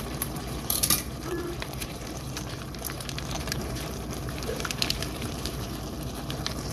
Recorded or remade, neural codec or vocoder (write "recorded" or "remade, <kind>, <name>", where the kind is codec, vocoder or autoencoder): remade, vocoder, BigVGAN v2